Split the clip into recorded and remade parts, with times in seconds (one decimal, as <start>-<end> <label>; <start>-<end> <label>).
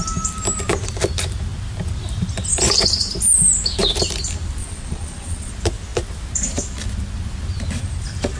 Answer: 0.0-4.6 recorded; 4.6-5.5 remade; 5.5-8.4 recorded